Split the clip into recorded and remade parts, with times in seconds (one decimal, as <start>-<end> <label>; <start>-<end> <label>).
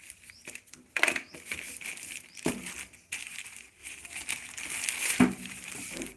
0.0-3.8 remade; 3.8-5.2 recorded; 5.2-6.2 remade